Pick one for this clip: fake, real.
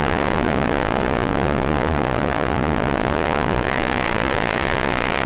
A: fake